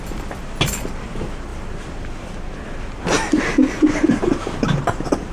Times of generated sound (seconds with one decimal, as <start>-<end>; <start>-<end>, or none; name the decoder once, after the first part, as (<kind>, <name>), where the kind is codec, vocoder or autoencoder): none